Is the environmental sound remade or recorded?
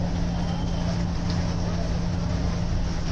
recorded